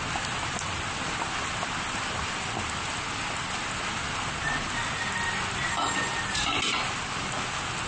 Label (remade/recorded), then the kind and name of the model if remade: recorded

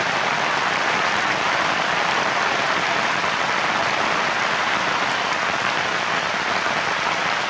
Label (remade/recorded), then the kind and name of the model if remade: recorded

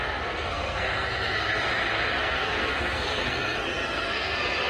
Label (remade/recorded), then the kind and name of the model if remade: remade, codec, SNAC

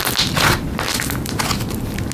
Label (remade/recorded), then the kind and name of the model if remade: recorded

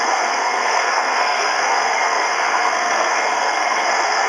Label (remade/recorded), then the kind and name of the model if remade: remade, codec, SNAC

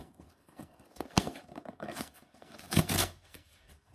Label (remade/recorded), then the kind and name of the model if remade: remade, codec, SNAC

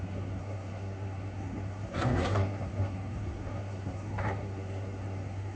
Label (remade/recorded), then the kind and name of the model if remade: remade, codec, SNAC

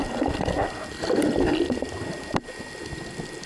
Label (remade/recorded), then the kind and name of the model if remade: recorded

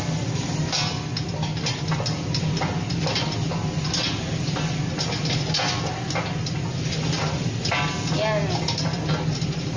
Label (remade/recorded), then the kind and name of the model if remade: recorded